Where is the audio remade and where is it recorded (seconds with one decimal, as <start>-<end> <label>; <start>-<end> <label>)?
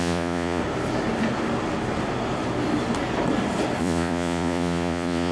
0.0-0.6 remade; 0.6-3.8 recorded; 3.8-5.3 remade